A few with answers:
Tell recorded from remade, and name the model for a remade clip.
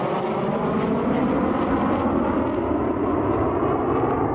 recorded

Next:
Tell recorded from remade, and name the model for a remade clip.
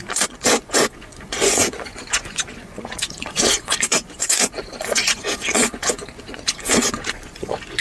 remade, vocoder, Vocos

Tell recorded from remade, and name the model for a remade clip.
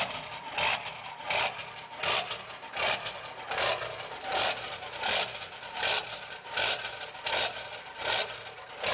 recorded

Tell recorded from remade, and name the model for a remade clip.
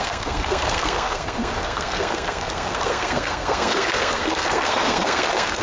remade, codec, SNAC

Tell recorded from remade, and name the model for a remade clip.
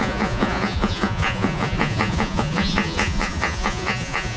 remade, vocoder, Vocos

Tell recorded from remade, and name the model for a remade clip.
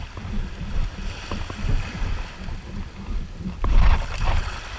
recorded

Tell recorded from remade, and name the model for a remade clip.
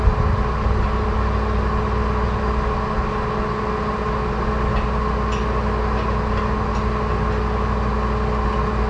recorded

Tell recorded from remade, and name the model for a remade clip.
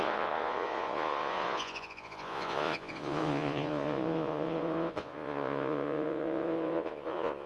remade, vocoder, Vocos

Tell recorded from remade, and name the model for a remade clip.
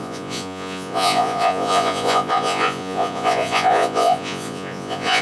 remade, vocoder, Vocos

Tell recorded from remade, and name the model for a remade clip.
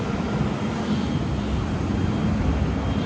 recorded